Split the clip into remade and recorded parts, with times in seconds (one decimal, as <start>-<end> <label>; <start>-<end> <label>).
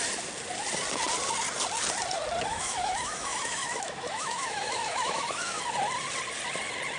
0.0-2.5 recorded; 2.5-5.6 remade; 5.6-7.0 recorded